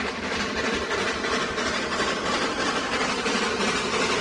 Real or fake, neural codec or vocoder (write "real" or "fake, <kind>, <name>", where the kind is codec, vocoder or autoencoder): real